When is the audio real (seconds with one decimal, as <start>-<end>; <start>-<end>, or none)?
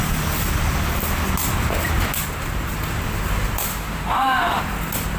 0.0-3.7; 4.6-5.2